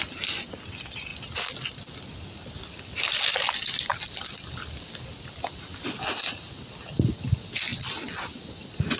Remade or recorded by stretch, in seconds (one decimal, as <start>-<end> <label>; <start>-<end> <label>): 0.0-9.0 recorded